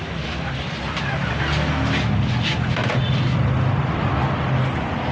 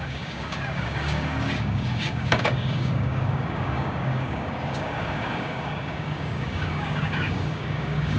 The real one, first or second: first